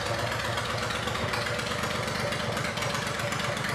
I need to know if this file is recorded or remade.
recorded